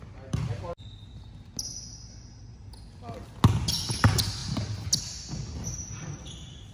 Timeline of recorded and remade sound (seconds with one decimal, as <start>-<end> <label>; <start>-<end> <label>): 0.0-6.7 recorded